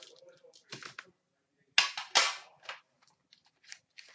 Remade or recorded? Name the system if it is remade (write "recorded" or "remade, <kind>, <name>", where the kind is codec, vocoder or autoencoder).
recorded